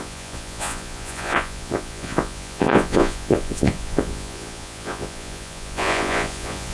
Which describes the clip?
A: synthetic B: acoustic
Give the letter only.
A